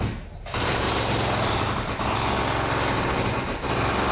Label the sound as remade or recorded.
recorded